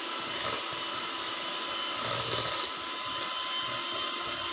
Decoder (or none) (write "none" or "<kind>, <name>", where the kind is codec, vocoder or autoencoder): none